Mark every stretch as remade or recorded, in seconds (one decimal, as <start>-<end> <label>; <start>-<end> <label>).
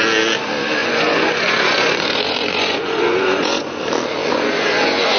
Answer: 0.0-0.8 recorded; 0.8-3.8 remade; 3.8-4.2 recorded; 4.2-5.2 remade